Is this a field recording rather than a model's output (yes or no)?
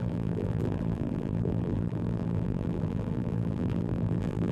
no